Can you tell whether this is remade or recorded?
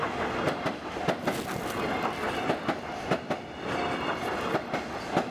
recorded